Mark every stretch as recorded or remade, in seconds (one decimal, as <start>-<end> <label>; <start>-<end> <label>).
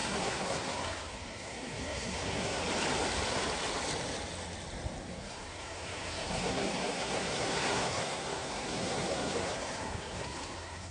0.0-2.6 remade; 2.6-5.1 recorded; 5.1-10.9 remade